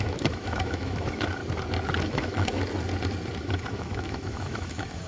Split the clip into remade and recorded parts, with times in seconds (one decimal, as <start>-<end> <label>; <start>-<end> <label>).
0.0-1.4 remade; 1.4-2.0 recorded; 2.0-2.6 remade; 2.6-3.4 recorded; 3.4-5.1 remade